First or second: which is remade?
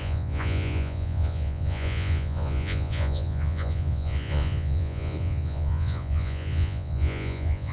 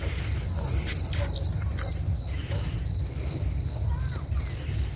first